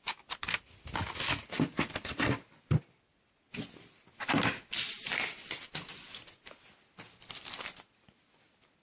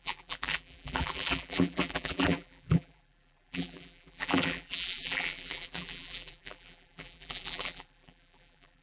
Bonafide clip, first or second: first